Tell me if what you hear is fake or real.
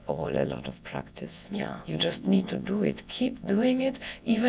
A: fake